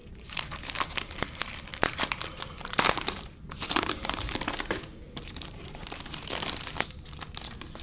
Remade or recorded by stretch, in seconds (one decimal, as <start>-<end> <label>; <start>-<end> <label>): 0.0-0.6 remade; 0.6-1.7 recorded; 1.7-5.9 remade; 5.9-7.8 recorded